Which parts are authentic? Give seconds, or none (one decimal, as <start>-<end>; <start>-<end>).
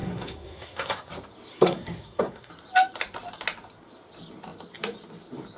1.1-1.5; 2.5-5.6